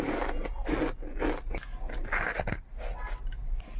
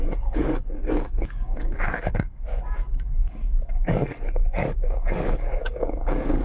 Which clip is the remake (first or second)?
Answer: second